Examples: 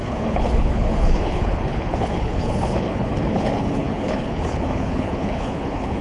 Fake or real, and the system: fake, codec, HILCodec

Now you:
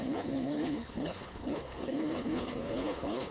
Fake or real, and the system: fake, codec, HILCodec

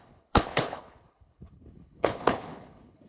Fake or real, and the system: fake, codec, HILCodec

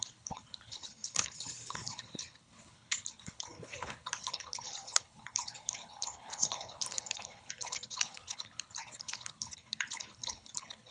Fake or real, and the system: fake, codec, HILCodec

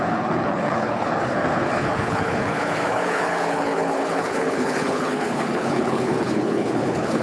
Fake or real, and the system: fake, codec, HILCodec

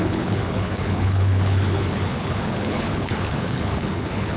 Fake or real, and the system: fake, codec, HILCodec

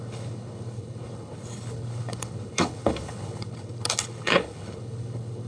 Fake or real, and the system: fake, codec, HILCodec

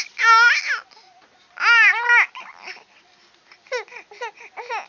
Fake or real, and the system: real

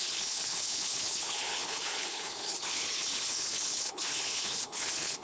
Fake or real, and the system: fake, codec, HILCodec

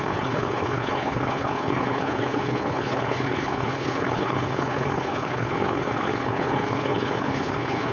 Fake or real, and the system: fake, codec, HILCodec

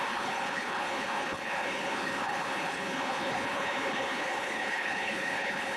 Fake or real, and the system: fake, codec, HILCodec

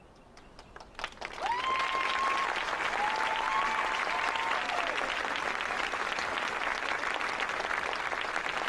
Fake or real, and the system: real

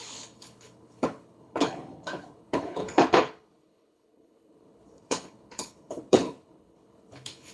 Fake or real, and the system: fake, codec, HILCodec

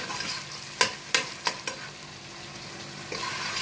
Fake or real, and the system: real